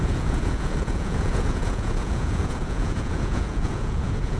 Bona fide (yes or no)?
no